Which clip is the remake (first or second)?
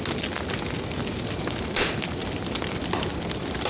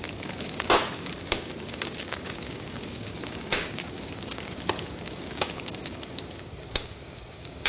second